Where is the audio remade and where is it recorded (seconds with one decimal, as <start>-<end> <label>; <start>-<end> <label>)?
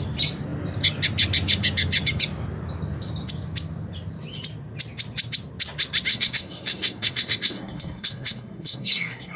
0.0-6.1 recorded; 6.1-9.4 remade